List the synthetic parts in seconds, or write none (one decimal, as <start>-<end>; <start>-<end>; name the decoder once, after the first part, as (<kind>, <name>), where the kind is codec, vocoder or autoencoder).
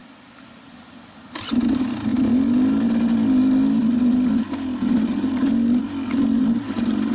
none